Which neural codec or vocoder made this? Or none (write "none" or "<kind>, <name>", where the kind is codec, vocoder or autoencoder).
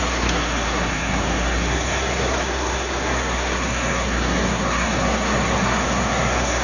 codec, SNAC